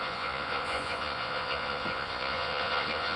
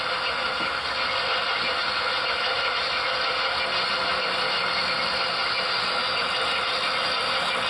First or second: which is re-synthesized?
first